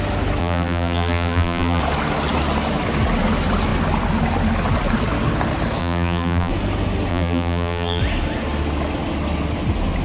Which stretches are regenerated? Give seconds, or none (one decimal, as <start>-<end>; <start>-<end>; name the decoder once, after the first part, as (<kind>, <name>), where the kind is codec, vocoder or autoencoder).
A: 0.4-1.8 (vocoder, BigVGAN v2); 5.8-6.5; 7.1-8.0